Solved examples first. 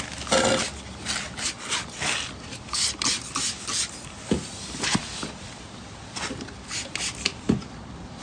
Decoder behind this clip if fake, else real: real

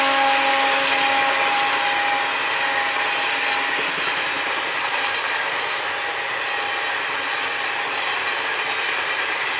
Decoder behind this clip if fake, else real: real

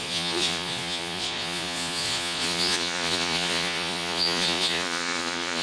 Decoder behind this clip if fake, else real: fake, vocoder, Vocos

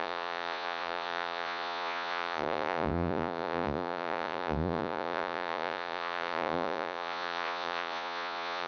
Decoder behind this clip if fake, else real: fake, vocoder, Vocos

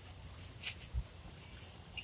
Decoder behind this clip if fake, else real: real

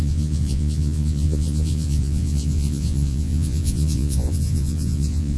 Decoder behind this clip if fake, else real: fake, vocoder, Vocos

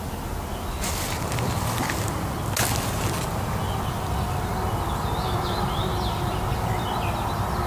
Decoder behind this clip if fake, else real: real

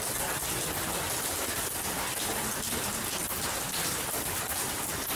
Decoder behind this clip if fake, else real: real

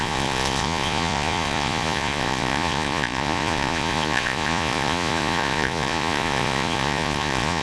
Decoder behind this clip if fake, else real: fake, vocoder, Vocos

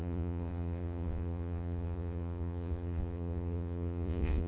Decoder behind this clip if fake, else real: fake, vocoder, Vocos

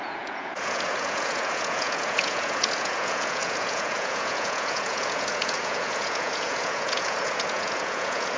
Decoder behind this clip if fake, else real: fake, vocoder, Vocos